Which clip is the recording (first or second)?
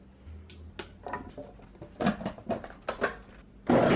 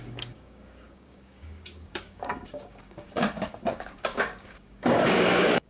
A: first